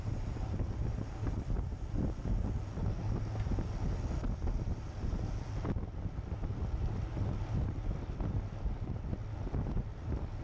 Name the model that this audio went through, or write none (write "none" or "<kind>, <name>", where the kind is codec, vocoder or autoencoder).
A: none